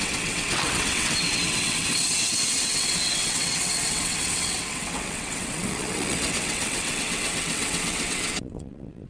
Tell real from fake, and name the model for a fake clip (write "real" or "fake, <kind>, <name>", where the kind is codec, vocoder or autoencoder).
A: fake, vocoder, WaveNeXt